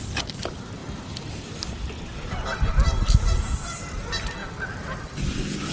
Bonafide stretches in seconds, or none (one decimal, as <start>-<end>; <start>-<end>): 0.0-5.7